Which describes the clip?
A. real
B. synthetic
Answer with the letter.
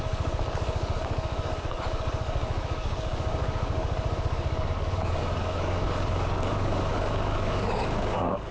B